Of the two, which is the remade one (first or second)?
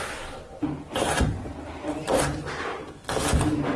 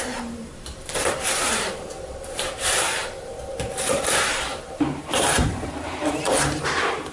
second